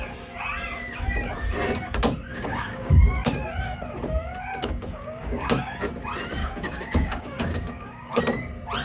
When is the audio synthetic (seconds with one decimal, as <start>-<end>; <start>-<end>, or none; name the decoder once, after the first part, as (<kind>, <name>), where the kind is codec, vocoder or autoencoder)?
2.3-2.9 (codec, DAC); 4.5-5.8; 6.4-8.2